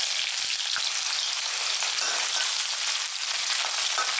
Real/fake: real